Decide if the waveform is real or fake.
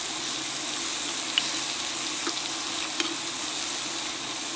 real